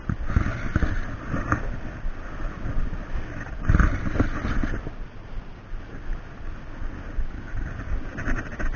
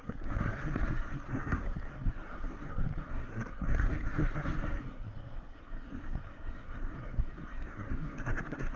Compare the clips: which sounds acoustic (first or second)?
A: first